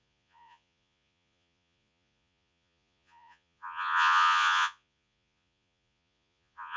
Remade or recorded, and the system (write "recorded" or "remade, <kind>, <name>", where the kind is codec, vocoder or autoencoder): remade, vocoder, Vocos